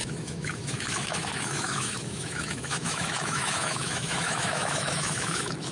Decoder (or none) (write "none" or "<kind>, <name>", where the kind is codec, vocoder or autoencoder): autoencoder, DAC-VAE